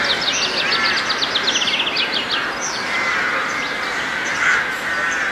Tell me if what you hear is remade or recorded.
recorded